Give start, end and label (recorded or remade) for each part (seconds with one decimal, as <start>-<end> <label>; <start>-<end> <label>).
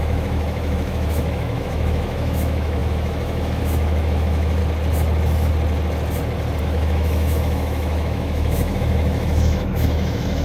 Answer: 0.0-4.6 remade; 4.6-6.6 recorded; 6.6-10.4 remade